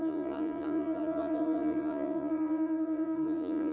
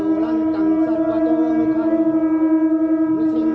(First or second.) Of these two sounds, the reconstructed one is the first